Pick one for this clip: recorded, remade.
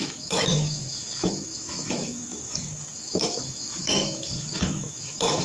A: remade